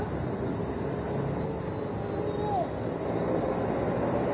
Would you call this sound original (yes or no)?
yes